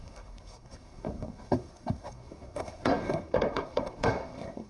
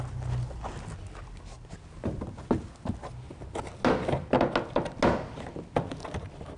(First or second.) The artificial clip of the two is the first